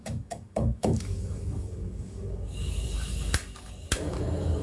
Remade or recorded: remade